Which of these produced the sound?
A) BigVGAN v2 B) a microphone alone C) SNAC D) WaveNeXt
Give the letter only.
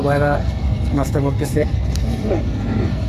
C